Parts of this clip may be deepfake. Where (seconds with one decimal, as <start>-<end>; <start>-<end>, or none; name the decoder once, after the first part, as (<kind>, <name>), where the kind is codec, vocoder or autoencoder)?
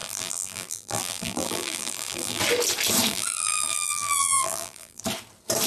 0.0-2.4 (vocoder, BigVGAN v2); 3.1-5.0